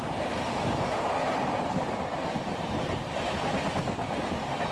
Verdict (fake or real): real